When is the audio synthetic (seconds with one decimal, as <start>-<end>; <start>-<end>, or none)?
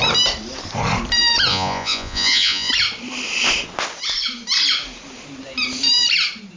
1.5-2.7